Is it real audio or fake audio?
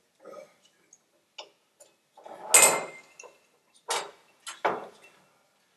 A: real